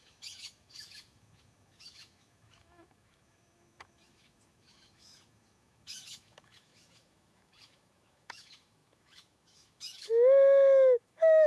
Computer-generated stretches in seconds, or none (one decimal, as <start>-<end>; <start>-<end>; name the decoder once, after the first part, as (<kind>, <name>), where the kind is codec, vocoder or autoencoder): 0.0-11.5 (autoencoder, DAC-VAE)